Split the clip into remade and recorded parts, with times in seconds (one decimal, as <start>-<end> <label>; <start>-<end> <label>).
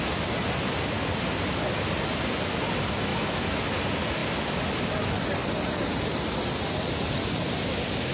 0.0-3.1 recorded; 3.1-3.6 remade; 3.6-8.1 recorded